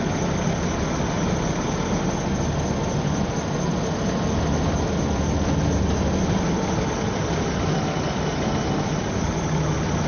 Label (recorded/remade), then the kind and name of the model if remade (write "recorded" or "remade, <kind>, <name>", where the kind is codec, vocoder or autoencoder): recorded